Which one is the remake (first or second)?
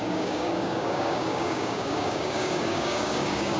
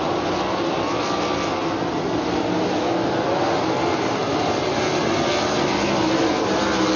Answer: first